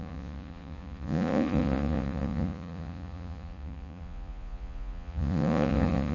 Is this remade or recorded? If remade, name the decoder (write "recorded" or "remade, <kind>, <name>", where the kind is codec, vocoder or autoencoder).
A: remade, vocoder, Vocos